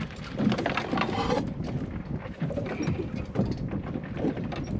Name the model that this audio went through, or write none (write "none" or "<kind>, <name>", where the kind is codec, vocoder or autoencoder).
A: none